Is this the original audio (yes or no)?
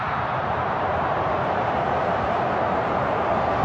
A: no